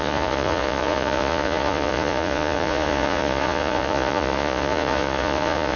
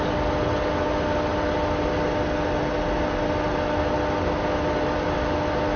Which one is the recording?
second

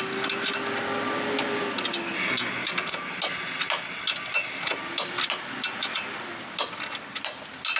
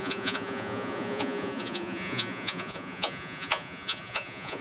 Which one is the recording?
first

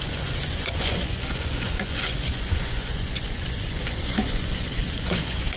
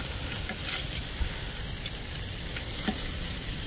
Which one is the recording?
second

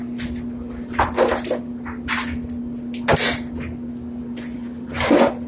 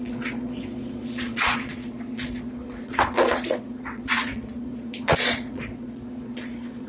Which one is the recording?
first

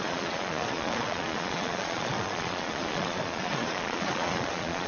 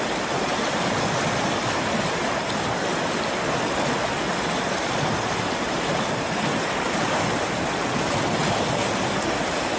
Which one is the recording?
second